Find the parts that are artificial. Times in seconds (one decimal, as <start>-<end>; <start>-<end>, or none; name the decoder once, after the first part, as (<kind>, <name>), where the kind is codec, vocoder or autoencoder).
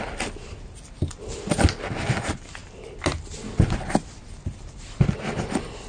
none